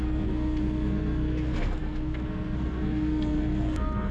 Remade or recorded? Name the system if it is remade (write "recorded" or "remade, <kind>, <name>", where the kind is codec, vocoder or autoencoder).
remade, codec, SNAC